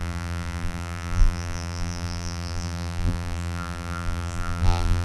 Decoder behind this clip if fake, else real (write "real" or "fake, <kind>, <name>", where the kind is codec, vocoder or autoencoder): fake, vocoder, BigVGAN v2